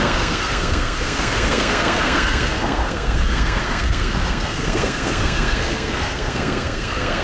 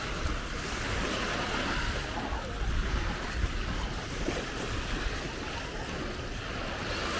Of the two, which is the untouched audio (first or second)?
second